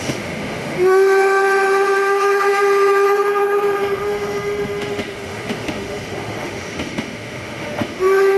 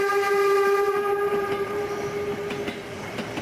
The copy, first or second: first